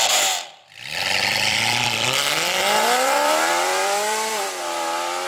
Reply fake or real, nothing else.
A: fake